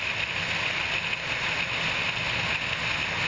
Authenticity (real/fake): real